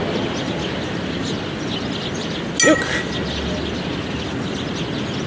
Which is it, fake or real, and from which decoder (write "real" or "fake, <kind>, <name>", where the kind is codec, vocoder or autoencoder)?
real